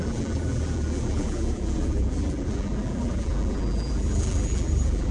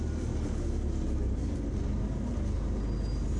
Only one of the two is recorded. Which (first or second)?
second